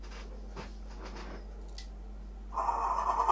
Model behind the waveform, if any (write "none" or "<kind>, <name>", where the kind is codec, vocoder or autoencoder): none